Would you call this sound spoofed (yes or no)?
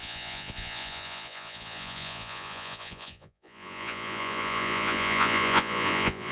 yes